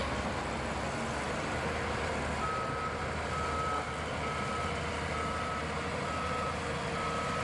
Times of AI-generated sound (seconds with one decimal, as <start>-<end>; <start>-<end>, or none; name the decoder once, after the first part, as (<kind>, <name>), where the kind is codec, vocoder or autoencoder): none